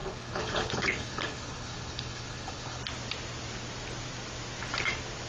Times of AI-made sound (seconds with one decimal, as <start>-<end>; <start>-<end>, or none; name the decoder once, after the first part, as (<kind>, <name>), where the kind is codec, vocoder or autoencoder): 0.0-2.8 (codec, HILCodec)